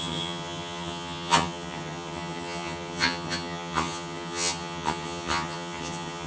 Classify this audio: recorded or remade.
remade